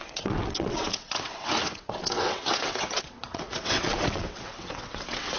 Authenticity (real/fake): fake